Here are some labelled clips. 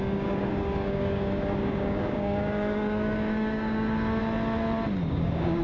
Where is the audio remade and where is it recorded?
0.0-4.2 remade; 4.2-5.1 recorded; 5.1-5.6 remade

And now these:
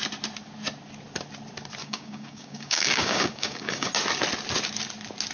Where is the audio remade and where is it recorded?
0.0-1.8 recorded; 1.8-3.9 remade; 3.9-5.3 recorded

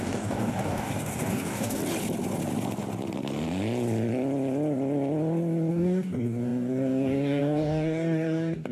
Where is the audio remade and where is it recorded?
0.0-1.8 remade; 1.8-5.7 recorded; 5.7-8.7 remade

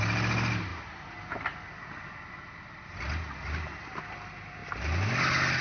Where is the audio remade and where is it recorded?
0.0-5.6 recorded

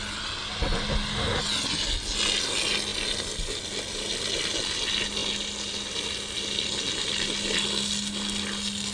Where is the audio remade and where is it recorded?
0.0-8.9 recorded

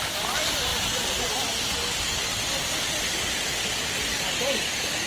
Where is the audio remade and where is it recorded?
0.0-4.1 recorded; 4.1-5.1 remade

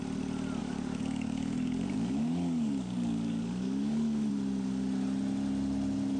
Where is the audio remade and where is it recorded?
0.0-0.6 recorded; 0.6-4.3 remade; 4.3-6.2 recorded

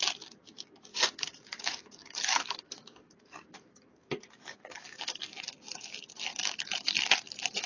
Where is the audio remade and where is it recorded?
0.0-0.9 recorded; 0.9-5.2 remade; 5.2-6.3 recorded; 6.3-7.7 remade